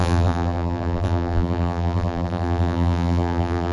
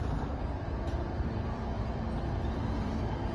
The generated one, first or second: first